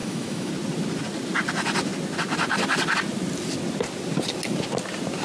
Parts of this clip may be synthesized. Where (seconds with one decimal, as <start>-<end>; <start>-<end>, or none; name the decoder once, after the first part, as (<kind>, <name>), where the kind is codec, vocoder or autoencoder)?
0.0-0.5 (autoencoder, DAC-VAE)